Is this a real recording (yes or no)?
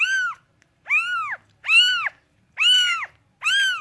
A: yes